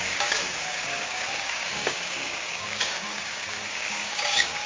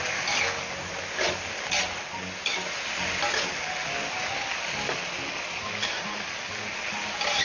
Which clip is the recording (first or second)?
second